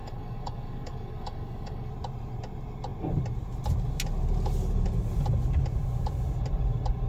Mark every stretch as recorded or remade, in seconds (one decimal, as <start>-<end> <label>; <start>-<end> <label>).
0.0-1.9 remade; 1.9-7.1 recorded